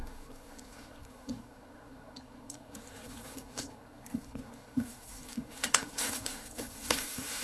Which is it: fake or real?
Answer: fake